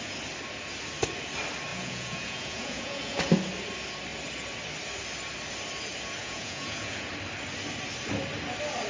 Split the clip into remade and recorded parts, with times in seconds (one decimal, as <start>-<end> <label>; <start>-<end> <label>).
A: 0.0-1.7 recorded; 1.7-3.2 remade; 3.2-6.2 recorded; 6.2-7.1 remade; 7.1-8.9 recorded